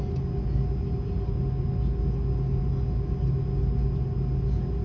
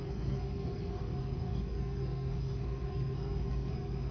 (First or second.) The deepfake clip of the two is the second